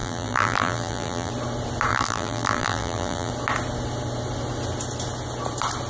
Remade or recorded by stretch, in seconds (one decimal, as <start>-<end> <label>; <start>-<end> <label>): 0.0-1.3 remade; 1.3-1.9 recorded; 1.9-3.3 remade; 3.3-5.9 recorded